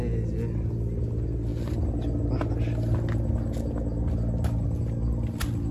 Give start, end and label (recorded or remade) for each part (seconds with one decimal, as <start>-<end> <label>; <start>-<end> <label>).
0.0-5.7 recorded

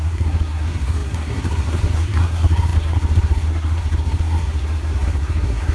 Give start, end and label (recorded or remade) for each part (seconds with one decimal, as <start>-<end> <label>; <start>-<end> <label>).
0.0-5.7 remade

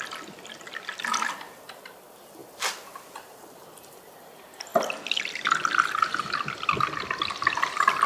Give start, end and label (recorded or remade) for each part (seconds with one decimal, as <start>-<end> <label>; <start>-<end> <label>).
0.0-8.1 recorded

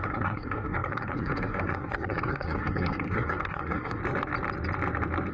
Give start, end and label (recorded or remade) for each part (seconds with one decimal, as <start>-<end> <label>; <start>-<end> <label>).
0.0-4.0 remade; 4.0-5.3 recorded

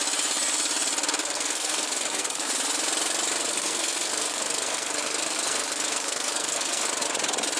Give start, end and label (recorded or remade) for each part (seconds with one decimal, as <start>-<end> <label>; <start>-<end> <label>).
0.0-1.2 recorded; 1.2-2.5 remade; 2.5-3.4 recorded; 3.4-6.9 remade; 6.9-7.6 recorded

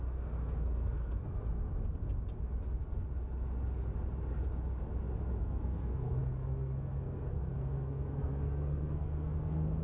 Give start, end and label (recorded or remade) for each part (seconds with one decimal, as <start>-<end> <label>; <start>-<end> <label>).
0.0-1.2 remade; 1.2-5.4 recorded; 5.4-9.8 remade

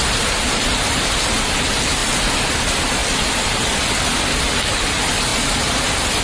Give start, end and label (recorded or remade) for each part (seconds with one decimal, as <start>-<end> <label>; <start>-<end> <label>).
0.0-6.2 recorded

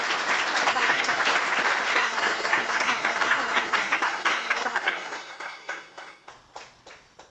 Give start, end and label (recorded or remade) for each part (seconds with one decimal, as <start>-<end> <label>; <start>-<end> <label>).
0.0-0.7 recorded; 0.7-1.2 remade; 1.2-1.9 recorded; 1.9-6.3 remade; 6.3-7.3 recorded